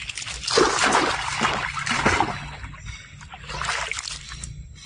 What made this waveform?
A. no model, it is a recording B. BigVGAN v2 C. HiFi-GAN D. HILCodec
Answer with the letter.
A